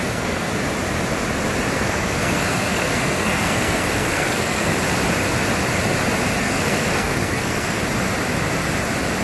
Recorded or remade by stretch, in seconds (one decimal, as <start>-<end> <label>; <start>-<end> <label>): 0.0-0.5 remade; 0.5-1.7 recorded; 1.7-4.7 remade; 4.7-6.4 recorded; 6.4-7.8 remade; 7.8-9.2 recorded